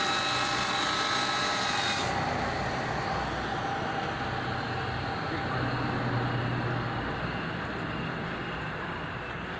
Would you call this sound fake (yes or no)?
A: no